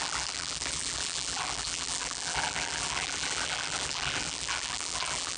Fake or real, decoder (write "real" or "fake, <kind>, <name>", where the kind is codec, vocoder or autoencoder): fake, vocoder, BigVGAN v2